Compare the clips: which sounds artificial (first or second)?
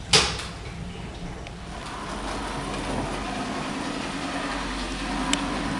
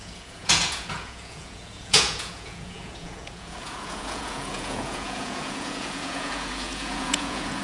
second